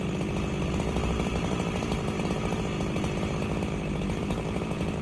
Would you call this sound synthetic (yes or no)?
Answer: yes